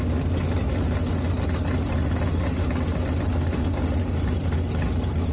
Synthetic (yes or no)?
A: no